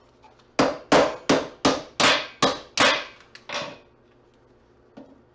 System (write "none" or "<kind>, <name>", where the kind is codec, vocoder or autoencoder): none